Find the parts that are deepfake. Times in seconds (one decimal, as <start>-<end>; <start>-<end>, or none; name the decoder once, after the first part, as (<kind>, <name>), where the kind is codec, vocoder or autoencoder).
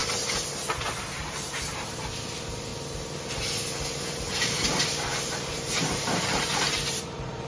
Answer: 1.0-2.7 (vocoder, BigVGAN v2); 4.0-7.5